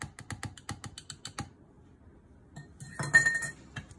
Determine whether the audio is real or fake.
real